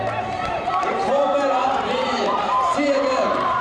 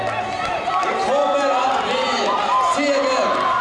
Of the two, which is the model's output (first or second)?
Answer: first